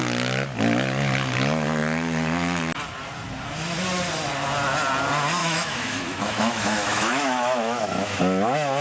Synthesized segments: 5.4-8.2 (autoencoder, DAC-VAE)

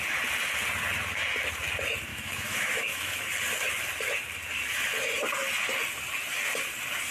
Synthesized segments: 2.1-3.2 (autoencoder, DAC-VAE)